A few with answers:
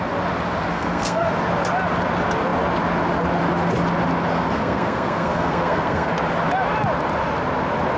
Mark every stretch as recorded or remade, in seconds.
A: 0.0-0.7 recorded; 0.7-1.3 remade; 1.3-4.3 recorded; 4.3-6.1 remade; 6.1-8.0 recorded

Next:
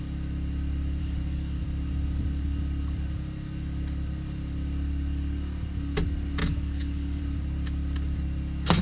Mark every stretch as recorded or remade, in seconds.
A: 0.0-1.0 recorded; 1.0-1.6 remade; 1.6-6.4 recorded; 6.4-7.2 remade; 7.2-8.8 recorded

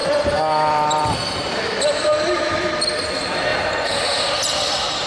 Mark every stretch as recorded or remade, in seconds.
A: 0.0-3.1 remade; 3.1-3.5 recorded; 3.5-5.1 remade

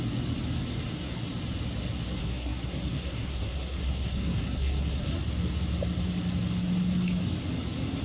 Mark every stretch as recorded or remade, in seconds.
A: 0.0-2.2 recorded; 2.2-5.2 remade; 5.2-8.0 recorded

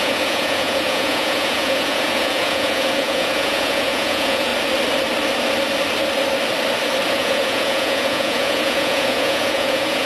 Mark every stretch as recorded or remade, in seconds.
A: 0.0-4.5 remade; 4.5-7.1 recorded; 7.1-10.1 remade

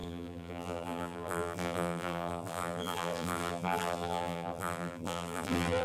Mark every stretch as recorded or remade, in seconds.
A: 0.0-5.8 remade